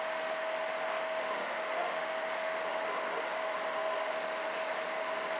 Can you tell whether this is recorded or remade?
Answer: remade